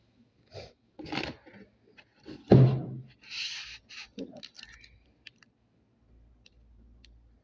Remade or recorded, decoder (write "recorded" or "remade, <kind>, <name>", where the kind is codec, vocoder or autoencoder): recorded